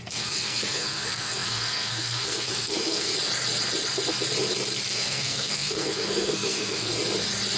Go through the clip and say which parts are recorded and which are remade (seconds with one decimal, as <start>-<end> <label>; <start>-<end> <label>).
0.0-3.1 remade; 3.1-4.9 recorded; 4.9-6.9 remade; 6.9-7.6 recorded